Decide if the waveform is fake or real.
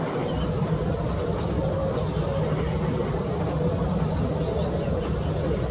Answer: real